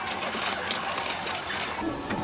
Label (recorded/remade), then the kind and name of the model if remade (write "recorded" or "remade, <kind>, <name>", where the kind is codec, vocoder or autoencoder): recorded